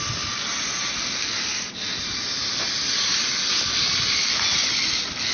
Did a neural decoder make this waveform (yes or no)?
no